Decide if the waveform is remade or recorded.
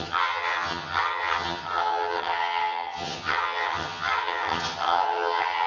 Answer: remade